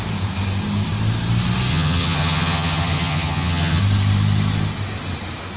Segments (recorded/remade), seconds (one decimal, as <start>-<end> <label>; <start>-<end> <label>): 0.0-1.7 recorded; 1.7-3.8 remade; 3.8-5.6 recorded